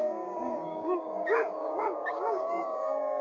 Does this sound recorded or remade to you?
remade